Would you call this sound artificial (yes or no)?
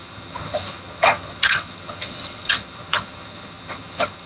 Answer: yes